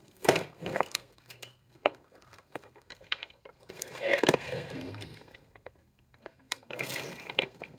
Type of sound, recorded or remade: remade